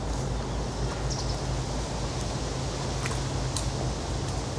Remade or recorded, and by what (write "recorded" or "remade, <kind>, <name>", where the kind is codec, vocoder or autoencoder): recorded